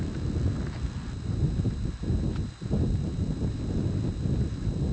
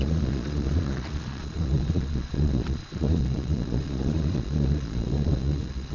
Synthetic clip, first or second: second